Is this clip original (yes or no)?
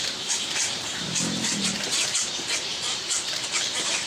no